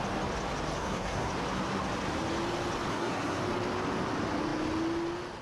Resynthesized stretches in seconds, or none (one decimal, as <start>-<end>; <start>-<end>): 0.8-1.3; 2.9-3.4